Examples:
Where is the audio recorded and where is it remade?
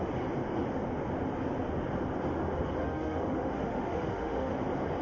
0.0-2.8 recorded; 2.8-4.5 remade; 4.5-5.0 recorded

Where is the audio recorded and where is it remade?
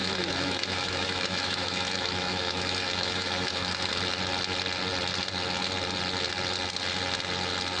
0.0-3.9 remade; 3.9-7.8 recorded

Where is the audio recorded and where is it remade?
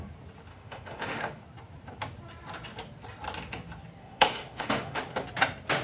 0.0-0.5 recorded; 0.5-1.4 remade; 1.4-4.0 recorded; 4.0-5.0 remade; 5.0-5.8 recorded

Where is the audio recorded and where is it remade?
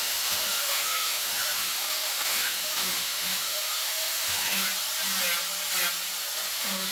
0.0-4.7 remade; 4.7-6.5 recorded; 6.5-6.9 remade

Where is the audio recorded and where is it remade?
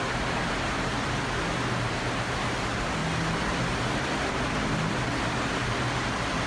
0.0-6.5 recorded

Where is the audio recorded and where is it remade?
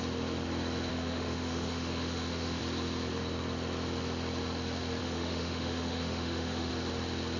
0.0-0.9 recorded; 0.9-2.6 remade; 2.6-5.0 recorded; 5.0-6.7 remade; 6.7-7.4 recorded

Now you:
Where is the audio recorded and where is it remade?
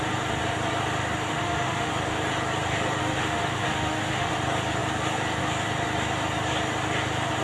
0.0-1.3 recorded; 1.3-1.9 remade; 1.9-3.0 recorded; 3.0-4.3 remade; 4.3-7.4 recorded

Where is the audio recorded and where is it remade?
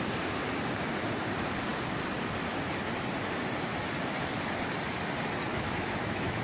0.0-5.5 recorded; 5.5-6.4 remade